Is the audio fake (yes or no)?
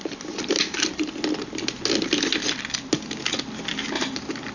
no